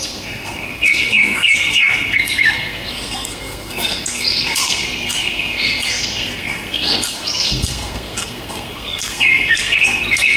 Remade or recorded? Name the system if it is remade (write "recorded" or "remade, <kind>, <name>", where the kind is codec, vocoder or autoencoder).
remade, codec, SNAC